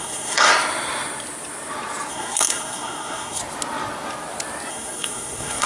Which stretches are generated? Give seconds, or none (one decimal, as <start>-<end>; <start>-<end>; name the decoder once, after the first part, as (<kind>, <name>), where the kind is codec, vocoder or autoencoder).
0.0-0.5 (codec, SNAC); 2.1-3.4; 4.7-5.7